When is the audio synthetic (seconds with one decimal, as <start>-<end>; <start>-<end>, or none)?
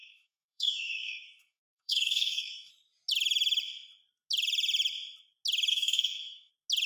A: 0.0-2.7; 5.7-6.5